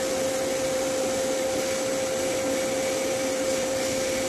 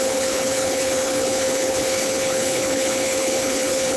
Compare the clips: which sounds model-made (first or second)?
second